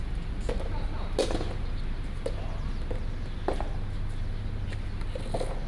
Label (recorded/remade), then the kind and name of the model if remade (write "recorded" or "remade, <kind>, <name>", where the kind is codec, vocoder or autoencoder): recorded